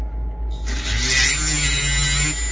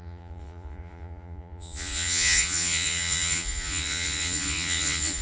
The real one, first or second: first